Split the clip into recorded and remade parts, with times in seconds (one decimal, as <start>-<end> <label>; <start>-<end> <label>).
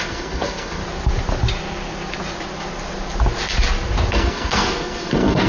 0.0-0.8 remade; 0.8-4.1 recorded; 4.1-5.5 remade